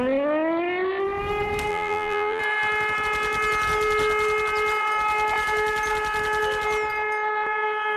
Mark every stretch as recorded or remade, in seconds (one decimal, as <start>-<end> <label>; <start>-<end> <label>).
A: 0.0-1.7 recorded; 1.7-2.4 remade; 2.4-8.0 recorded